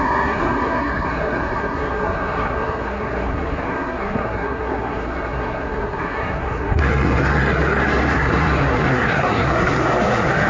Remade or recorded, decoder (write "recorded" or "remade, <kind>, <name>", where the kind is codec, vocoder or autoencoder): remade, codec, SNAC